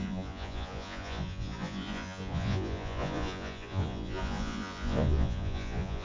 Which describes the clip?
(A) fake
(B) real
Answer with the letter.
A